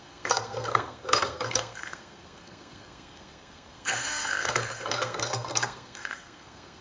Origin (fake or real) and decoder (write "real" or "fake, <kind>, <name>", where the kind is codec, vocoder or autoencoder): fake, codec, SNAC